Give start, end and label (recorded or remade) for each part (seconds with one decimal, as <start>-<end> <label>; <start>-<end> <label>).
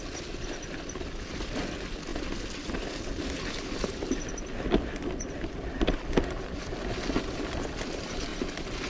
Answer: 0.0-8.9 recorded